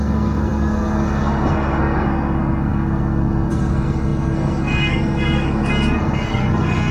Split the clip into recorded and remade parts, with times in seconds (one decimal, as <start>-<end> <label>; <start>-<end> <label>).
0.0-6.9 remade